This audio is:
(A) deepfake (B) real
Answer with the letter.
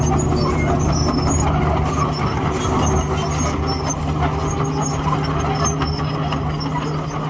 B